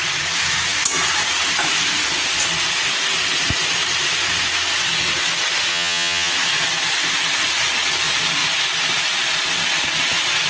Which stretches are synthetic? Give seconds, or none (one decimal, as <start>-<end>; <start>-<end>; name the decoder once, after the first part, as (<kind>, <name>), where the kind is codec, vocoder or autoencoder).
5.7-6.3 (vocoder, HiFi-GAN)